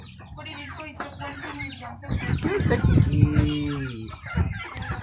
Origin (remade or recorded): recorded